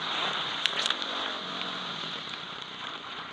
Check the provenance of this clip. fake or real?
fake